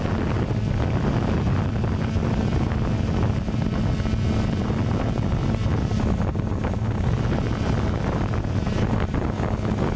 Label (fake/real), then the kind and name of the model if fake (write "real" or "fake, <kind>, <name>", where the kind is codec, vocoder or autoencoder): real